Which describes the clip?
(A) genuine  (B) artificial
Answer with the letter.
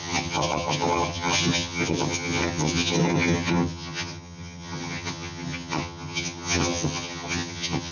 B